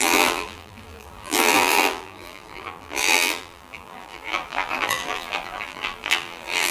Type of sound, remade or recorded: remade